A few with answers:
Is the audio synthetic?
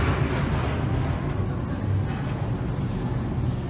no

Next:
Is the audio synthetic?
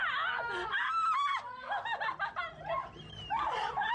no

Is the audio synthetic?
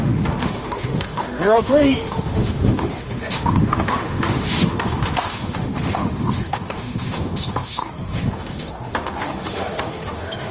yes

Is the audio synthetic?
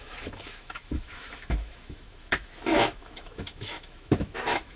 yes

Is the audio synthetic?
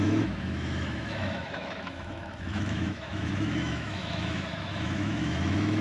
yes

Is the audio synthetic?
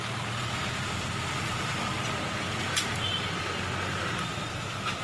no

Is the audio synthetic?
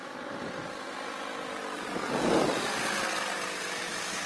no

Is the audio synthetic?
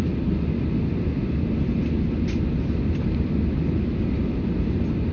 no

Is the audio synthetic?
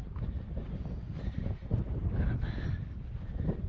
no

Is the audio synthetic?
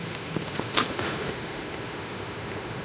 yes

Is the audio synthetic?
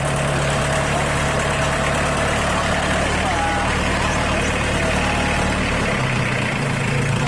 no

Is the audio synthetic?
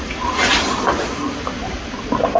no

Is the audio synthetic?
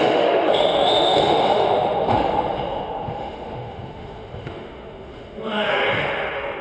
yes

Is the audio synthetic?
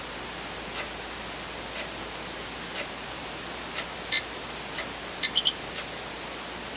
no